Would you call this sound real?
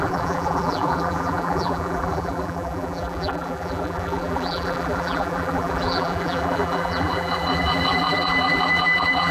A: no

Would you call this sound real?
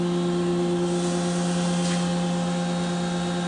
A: yes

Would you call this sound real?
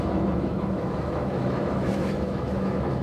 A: no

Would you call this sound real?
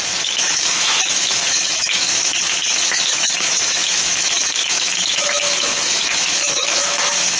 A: no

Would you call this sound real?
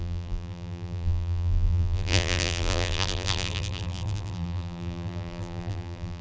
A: no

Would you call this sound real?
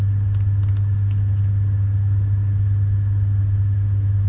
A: yes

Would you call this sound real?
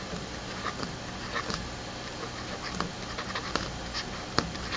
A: yes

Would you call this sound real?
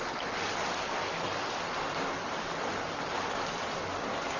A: yes